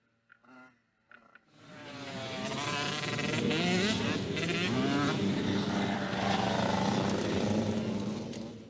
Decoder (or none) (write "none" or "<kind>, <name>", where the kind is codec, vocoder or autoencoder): none